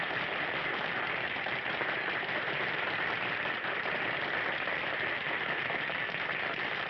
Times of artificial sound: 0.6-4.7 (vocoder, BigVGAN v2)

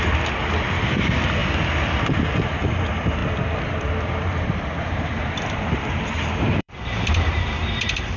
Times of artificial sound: 0.4-1.0 (vocoder, BigVGAN v2); 1.4-2.8; 3.2-8.2

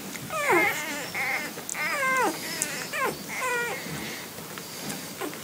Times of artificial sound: none